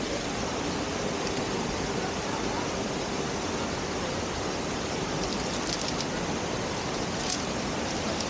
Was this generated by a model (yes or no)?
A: yes